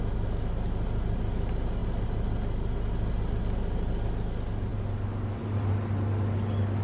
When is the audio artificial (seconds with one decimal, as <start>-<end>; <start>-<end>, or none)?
4.7-5.7